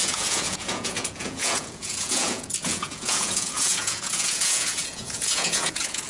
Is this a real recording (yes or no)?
no